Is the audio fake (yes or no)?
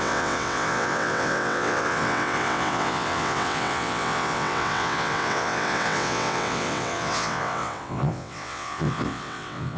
yes